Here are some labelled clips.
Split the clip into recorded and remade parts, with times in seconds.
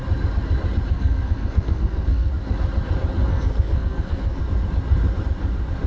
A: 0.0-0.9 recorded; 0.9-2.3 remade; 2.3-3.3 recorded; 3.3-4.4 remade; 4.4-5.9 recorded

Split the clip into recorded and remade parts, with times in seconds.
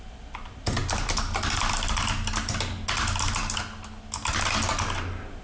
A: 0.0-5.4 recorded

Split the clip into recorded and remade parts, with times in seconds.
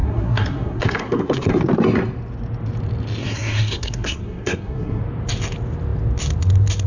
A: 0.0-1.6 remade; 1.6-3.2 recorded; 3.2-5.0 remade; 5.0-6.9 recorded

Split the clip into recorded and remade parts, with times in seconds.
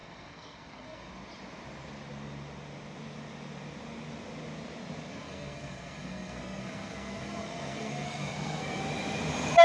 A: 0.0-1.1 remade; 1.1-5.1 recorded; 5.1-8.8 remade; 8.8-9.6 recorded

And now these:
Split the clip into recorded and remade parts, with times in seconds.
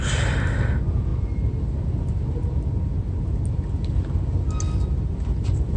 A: 0.0-5.8 recorded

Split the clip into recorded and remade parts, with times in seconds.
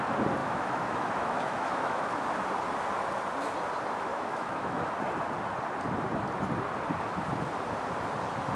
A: 0.0-0.4 recorded; 0.4-2.0 remade; 2.0-4.1 recorded; 4.1-4.9 remade; 4.9-8.6 recorded